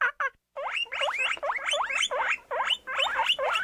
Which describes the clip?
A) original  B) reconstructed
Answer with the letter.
A